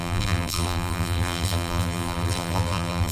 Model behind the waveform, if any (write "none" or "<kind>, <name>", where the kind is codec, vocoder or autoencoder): vocoder, BigVGAN v2